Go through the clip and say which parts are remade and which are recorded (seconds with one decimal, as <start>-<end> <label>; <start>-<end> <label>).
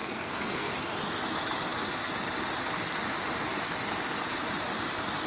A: 0.0-0.7 remade; 0.7-5.3 recorded